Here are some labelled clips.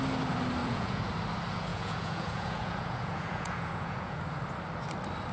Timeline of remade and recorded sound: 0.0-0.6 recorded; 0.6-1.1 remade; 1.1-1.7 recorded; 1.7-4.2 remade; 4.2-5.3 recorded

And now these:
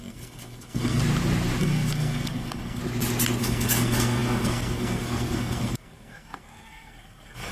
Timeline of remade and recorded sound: 0.0-1.0 remade; 1.0-1.6 recorded; 1.6-2.8 remade; 2.8-3.4 recorded; 3.4-7.5 remade

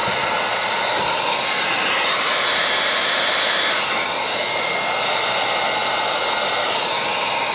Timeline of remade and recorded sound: 0.0-2.7 remade; 2.7-7.5 recorded

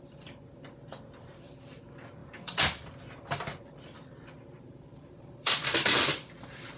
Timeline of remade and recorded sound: 0.0-4.9 recorded; 4.9-6.3 remade; 6.3-6.8 recorded

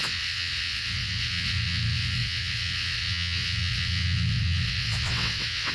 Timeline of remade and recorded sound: 0.0-5.7 remade

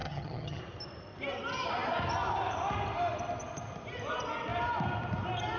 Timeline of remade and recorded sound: 0.0-0.6 remade; 0.6-5.6 recorded